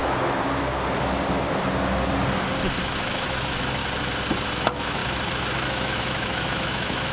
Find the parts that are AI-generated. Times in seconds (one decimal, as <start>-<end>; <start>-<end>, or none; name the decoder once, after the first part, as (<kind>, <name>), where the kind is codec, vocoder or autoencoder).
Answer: 2.8-3.8 (autoencoder, DAC-VAE); 4.6-5.0; 5.5-7.1

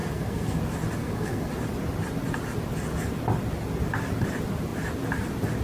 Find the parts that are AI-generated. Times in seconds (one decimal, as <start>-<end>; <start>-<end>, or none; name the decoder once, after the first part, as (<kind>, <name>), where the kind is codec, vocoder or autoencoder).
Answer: 0.0-0.6 (codec, SNAC); 1.0-1.5

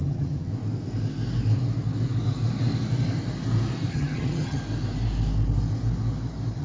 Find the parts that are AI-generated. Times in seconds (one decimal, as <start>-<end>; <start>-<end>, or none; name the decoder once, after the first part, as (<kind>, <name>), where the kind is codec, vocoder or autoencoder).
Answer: 0.0-0.5 (vocoder, HiFi-GAN); 3.9-4.6

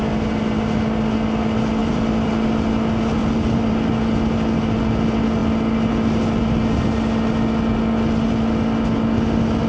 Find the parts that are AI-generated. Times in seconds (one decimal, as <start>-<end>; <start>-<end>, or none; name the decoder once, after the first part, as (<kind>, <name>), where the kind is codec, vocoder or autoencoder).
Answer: 1.8-2.3 (vocoder, BigVGAN v2); 3.2-3.7

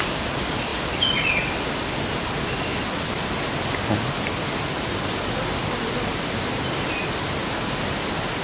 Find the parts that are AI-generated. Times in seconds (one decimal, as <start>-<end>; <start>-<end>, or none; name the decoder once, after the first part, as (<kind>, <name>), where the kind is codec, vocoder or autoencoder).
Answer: none

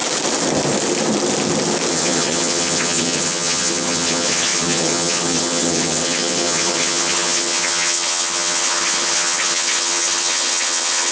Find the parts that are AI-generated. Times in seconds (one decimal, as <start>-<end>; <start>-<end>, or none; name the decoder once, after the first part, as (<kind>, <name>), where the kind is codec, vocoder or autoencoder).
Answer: 1.9-11.1 (vocoder, HiFi-GAN)

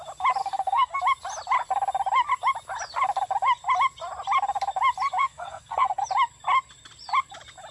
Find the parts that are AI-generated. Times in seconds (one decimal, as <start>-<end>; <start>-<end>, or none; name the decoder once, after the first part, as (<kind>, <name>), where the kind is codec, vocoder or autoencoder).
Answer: 0.4-1.0 (codec, SNAC); 5.2-6.0

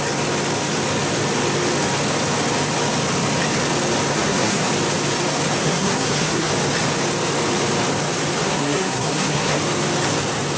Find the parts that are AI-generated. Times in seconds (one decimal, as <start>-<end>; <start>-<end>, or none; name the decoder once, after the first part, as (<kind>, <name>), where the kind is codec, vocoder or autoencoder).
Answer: 4.1-4.7 (codec, SNAC); 5.6-6.5; 8.4-9.6